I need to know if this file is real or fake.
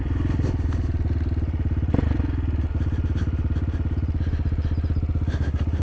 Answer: real